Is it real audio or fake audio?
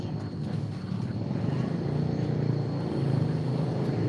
real